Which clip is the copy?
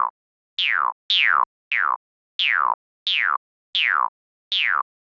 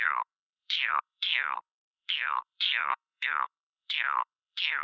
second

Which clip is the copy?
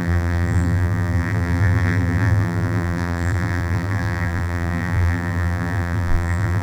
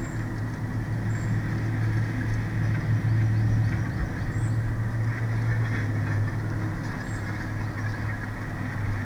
first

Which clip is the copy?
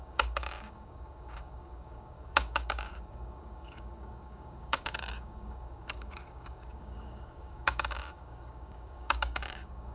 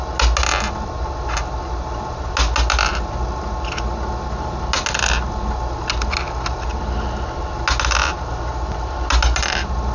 first